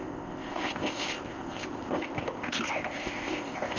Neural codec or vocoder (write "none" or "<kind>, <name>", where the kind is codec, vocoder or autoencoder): codec, ZipCodec